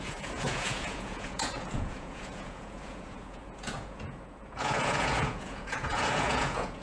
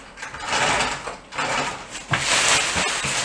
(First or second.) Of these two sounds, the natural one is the second